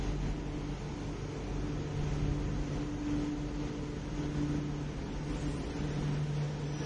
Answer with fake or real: real